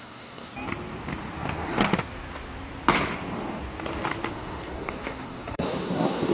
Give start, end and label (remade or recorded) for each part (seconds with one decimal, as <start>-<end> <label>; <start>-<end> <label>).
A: 0.0-0.5 remade; 0.5-4.3 recorded; 4.3-6.3 remade